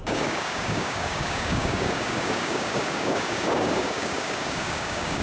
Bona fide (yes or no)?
no